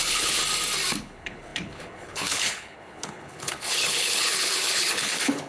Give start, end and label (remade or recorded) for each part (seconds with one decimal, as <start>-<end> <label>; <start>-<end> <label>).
0.0-0.4 remade; 0.4-1.0 recorded; 1.0-5.5 remade